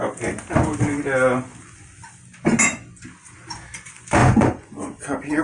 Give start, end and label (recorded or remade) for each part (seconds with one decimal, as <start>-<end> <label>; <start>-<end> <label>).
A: 0.0-4.2 recorded; 4.2-5.4 remade